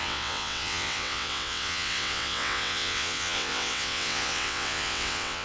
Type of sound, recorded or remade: remade